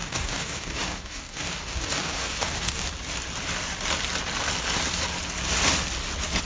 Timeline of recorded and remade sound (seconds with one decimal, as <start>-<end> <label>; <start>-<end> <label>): 0.0-2.9 remade; 2.9-6.5 recorded